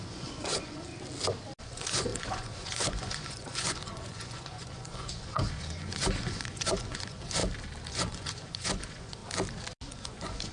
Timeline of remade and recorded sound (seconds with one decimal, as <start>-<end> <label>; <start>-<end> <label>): 0.0-0.9 remade; 0.9-1.6 recorded; 1.6-7.4 remade; 7.4-7.9 recorded; 7.9-9.2 remade; 9.2-9.9 recorded; 9.9-10.5 remade